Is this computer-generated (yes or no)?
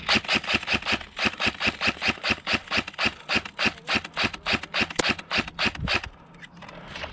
no